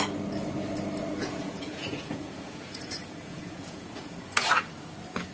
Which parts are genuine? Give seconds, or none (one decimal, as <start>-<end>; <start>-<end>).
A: 0.0-1.2; 4.4-5.3